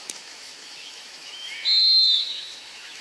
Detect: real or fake fake